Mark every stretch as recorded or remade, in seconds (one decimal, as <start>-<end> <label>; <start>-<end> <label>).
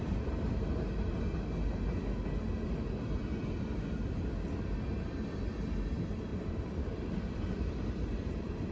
0.0-6.3 recorded; 6.3-8.7 remade